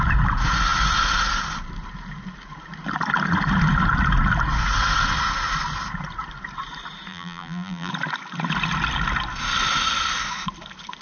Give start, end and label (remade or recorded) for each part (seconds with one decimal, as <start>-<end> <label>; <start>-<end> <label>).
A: 0.0-7.1 recorded; 7.1-7.9 remade; 7.9-11.0 recorded